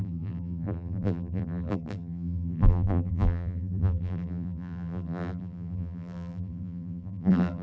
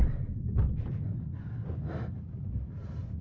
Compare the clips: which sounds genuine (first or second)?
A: second